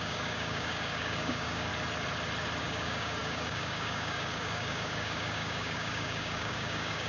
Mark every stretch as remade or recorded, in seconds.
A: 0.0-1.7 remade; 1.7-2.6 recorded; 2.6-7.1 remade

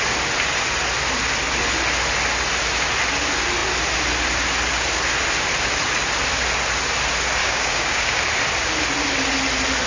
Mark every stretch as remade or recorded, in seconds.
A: 0.0-7.4 recorded; 7.4-8.2 remade; 8.2-9.9 recorded

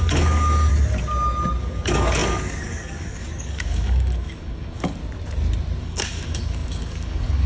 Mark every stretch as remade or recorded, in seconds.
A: 0.0-0.7 remade; 0.7-1.6 recorded; 1.6-5.0 remade; 5.0-5.8 recorded; 5.8-7.5 remade

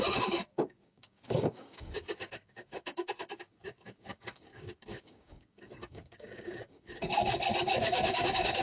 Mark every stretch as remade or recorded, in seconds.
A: 0.0-7.1 remade; 7.1-7.7 recorded; 7.7-8.6 remade

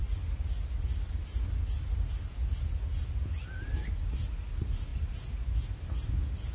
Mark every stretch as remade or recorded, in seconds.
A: 0.0-6.5 recorded

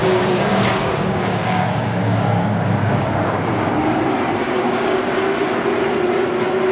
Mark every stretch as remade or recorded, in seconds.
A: 0.0-4.0 remade; 4.0-4.4 recorded; 4.4-5.1 remade; 5.1-6.7 recorded